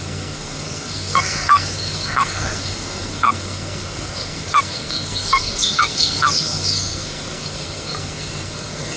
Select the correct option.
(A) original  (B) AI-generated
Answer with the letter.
B